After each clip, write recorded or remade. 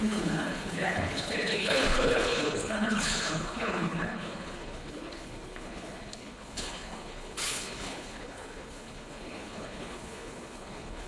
remade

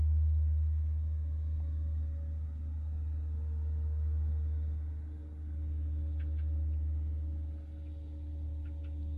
recorded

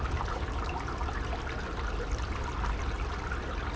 recorded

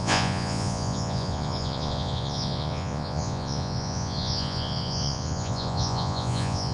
remade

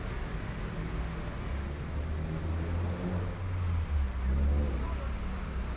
recorded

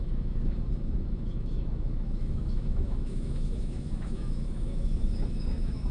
remade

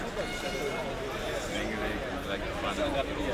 recorded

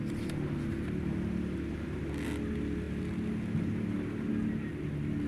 recorded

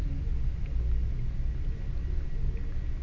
recorded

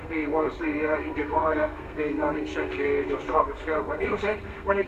remade